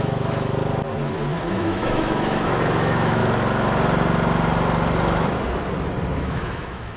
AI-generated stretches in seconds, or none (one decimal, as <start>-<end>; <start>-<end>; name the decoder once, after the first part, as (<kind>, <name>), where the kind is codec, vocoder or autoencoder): 0.0-0.6 (autoencoder, DAC-VAE); 1.5-3.2; 6.2-7.0